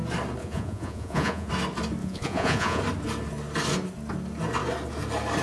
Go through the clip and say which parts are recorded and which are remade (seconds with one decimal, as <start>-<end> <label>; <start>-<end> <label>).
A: 0.0-0.4 recorded; 0.4-1.5 remade; 1.5-2.0 recorded; 2.0-2.8 remade; 2.8-5.4 recorded